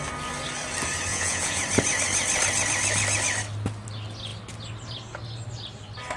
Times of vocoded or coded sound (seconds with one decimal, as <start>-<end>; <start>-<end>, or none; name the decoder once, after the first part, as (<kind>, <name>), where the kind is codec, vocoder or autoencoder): 1.1-1.6 (vocoder, Vocos)